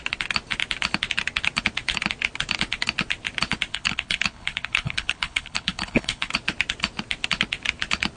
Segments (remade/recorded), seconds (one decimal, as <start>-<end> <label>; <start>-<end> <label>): 0.0-3.7 recorded; 3.7-6.3 remade; 6.3-8.2 recorded